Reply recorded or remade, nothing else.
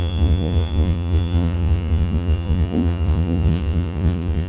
remade